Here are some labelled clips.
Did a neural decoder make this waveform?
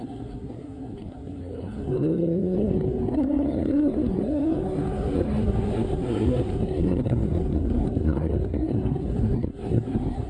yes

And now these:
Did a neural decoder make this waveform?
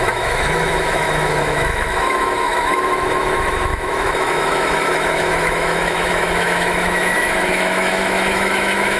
yes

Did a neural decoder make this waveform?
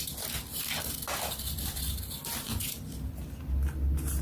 no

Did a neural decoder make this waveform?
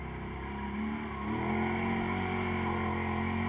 no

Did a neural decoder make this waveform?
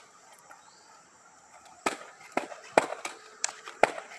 yes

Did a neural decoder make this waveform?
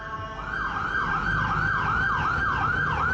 no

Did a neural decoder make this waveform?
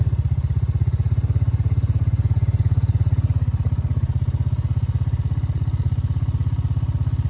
no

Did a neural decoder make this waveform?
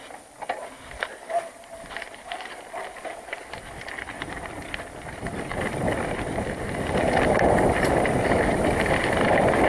yes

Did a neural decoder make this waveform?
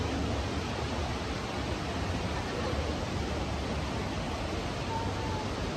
no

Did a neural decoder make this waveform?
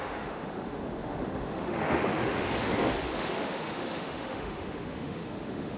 yes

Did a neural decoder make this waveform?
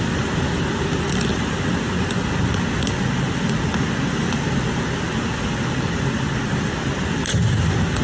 no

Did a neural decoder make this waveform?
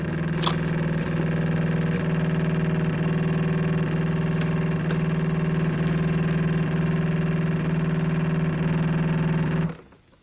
no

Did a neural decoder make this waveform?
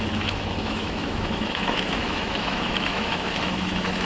yes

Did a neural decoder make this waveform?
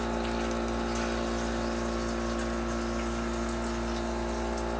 no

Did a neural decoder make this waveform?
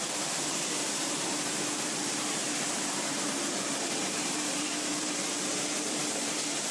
yes